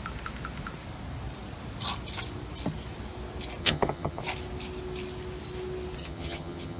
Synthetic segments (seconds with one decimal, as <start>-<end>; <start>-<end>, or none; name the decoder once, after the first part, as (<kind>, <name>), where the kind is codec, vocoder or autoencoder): 3.6-4.2 (vocoder, HiFi-GAN); 6.0-6.8